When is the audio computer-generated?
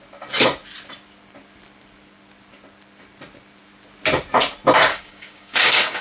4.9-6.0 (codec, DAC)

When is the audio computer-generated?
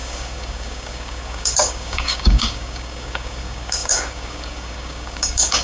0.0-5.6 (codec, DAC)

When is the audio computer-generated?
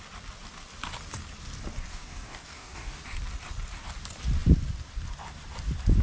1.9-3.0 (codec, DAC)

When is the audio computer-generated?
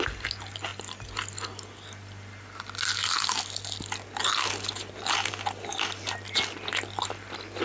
none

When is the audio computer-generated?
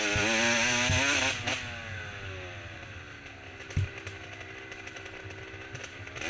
none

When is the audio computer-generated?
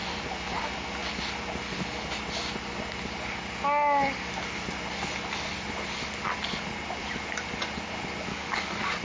8.3-9.0 (codec, DAC)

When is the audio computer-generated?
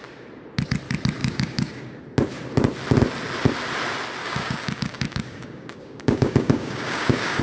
1.2-2.0 (codec, DAC); 4.2-7.4